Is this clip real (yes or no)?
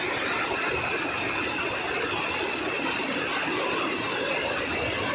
yes